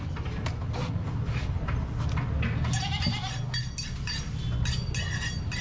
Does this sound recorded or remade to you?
recorded